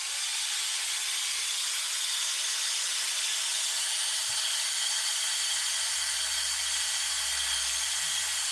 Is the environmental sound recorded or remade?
recorded